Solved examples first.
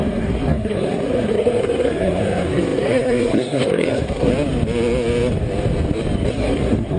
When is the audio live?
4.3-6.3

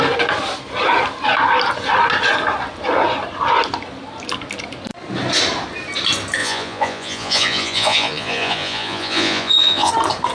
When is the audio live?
0.0-6.4; 9.9-10.3

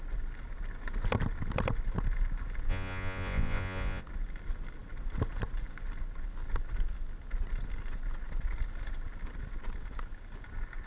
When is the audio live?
0.0-2.7; 4.0-10.9

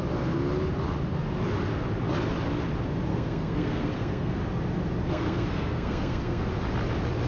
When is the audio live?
0.0-3.1; 4.4-5.0; 6.5-7.3

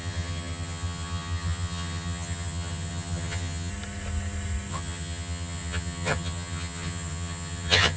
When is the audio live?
3.7-4.7

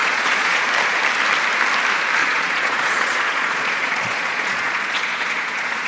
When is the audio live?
0.6-2.2